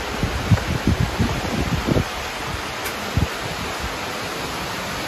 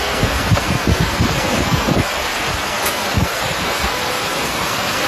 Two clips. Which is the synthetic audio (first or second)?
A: second